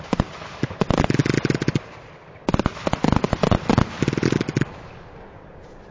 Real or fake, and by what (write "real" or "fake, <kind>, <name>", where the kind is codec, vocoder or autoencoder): real